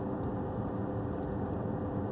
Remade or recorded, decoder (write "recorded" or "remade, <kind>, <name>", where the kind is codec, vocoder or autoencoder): recorded